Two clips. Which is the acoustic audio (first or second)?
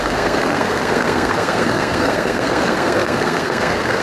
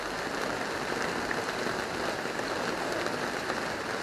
second